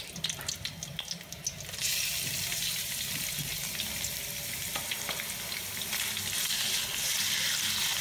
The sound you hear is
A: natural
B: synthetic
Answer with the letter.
A